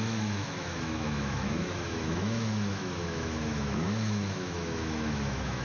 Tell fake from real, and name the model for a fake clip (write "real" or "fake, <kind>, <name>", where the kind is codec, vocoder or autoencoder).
fake, autoencoder, DAC-VAE